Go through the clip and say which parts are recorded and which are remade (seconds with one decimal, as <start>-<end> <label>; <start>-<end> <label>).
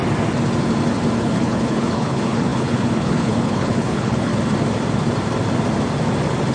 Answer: 0.0-1.2 recorded; 1.2-4.3 remade; 4.3-6.5 recorded